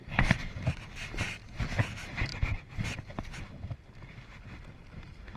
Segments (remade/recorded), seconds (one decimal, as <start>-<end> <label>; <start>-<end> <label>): 0.0-1.8 remade; 1.8-2.3 recorded; 2.3-3.1 remade; 3.1-5.4 recorded